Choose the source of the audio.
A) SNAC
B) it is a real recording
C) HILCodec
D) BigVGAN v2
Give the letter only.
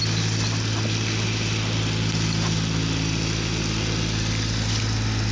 B